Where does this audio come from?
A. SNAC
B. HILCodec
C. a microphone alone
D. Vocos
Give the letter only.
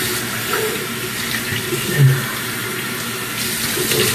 C